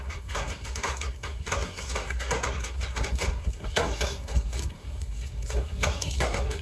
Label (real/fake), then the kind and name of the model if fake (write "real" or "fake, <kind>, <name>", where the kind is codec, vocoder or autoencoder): fake, codec, SNAC